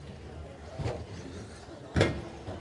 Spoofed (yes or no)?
no